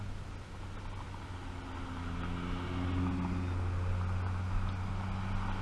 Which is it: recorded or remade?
recorded